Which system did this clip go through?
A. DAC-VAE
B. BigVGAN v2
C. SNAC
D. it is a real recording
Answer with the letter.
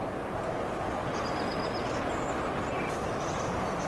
D